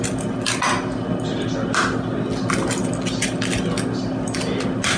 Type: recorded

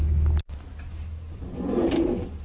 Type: recorded